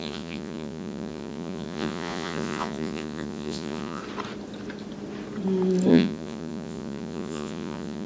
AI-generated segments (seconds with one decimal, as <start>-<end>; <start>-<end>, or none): 0.0-4.0; 5.9-8.1